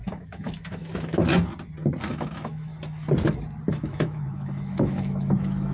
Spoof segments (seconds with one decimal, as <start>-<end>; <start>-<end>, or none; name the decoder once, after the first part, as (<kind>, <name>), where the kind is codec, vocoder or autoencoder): 0.0-1.2 (autoencoder, DAC-VAE); 2.1-2.7; 3.7-5.7